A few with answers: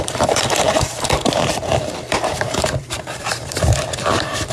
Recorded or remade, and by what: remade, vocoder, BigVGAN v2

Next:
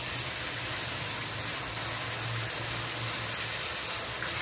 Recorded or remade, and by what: recorded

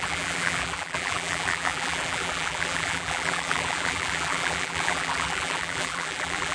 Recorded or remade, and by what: remade, vocoder, BigVGAN v2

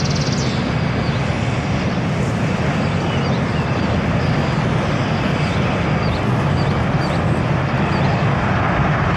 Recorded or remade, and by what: recorded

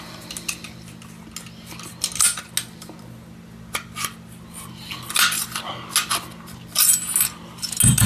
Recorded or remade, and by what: recorded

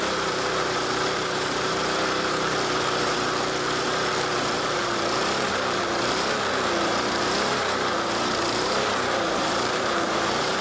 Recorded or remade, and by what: remade, vocoder, BigVGAN v2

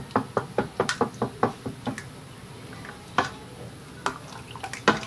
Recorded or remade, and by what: recorded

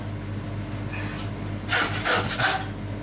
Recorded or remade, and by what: recorded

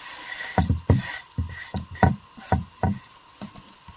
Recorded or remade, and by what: recorded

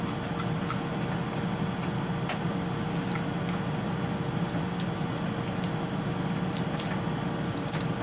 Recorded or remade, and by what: recorded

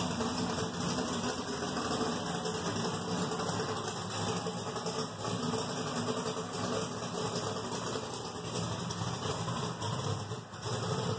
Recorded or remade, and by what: recorded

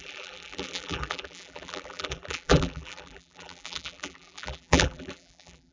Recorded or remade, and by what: remade, vocoder, BigVGAN v2